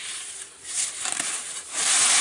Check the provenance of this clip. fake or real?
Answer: fake